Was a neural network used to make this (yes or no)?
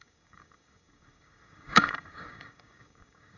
yes